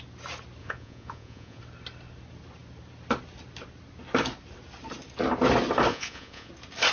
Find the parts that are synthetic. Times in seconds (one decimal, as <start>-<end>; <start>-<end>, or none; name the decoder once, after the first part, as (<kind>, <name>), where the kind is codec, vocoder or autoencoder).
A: 0.6-1.6 (vocoder, Vocos); 5.9-6.5

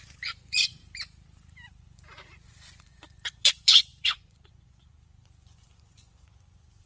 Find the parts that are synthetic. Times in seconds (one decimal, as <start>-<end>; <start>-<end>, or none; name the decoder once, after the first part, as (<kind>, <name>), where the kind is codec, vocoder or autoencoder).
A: 0.0-0.8 (vocoder, Vocos); 1.7-6.9